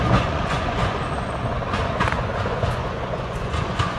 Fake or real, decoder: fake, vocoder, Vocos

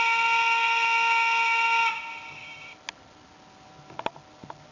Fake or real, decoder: real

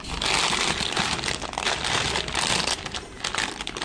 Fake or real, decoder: real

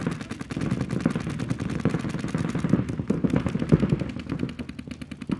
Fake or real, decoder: real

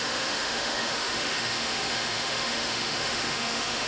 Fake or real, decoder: fake, autoencoder, DAC-VAE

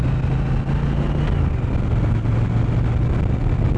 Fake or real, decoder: real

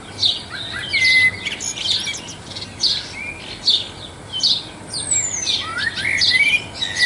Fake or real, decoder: real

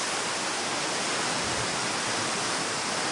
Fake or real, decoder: real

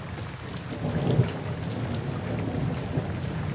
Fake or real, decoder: real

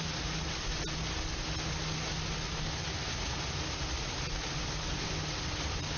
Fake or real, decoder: real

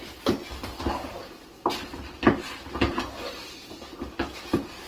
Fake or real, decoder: real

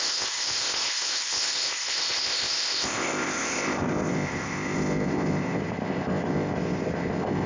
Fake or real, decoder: fake, codec, ZipCodec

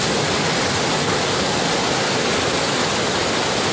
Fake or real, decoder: real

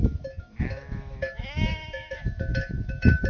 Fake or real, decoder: fake, autoencoder, DAC-VAE